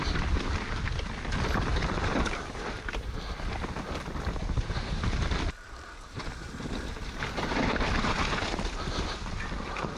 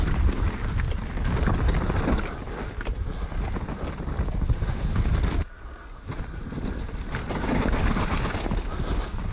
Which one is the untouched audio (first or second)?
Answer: second